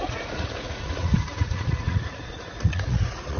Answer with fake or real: fake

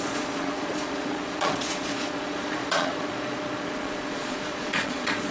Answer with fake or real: fake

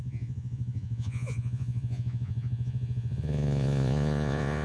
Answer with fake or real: fake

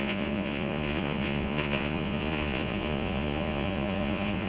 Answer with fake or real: fake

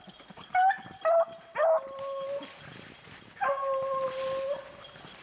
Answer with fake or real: real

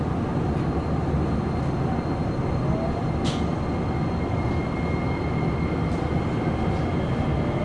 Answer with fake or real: real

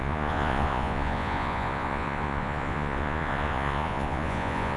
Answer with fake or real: fake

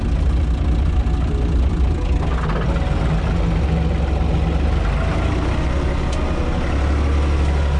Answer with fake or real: real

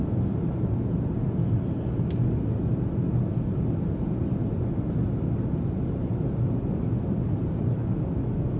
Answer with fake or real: real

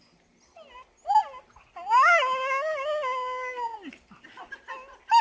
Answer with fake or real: real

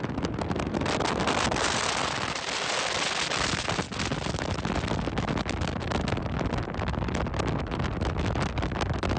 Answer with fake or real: real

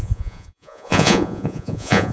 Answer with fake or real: fake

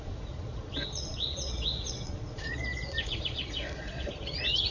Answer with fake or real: fake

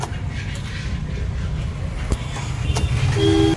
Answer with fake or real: real